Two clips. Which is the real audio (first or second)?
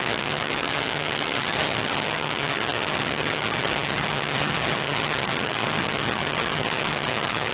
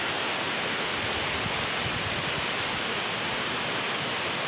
second